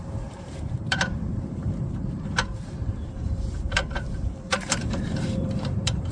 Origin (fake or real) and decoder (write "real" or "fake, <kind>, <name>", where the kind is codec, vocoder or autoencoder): fake, vocoder, BigVGAN v2